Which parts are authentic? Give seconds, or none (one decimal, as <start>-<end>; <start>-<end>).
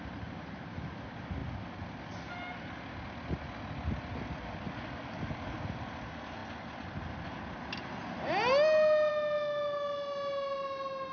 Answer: 0.0-11.1